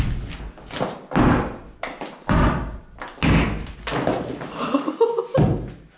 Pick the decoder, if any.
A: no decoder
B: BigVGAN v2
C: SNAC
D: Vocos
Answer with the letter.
A